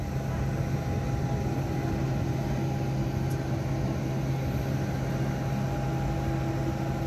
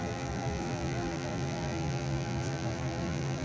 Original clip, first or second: first